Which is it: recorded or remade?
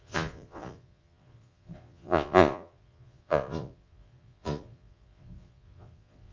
remade